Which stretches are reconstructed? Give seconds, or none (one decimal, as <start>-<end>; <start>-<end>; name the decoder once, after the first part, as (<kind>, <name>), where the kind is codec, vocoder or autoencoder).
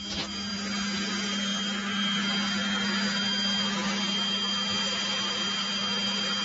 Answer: none